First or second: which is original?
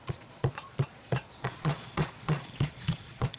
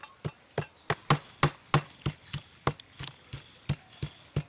second